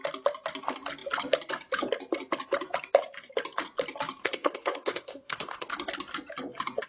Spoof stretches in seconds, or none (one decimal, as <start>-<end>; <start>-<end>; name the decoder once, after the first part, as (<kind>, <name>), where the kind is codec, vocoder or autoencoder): 4.2-5.7 (codec, SNAC)